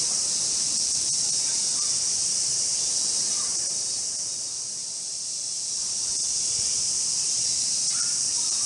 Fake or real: fake